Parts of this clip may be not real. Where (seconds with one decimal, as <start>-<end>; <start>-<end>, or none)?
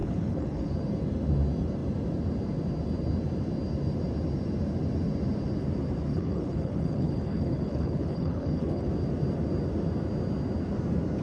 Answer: 0.0-0.7; 6.1-8.9